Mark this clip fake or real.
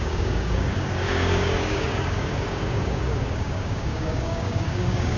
fake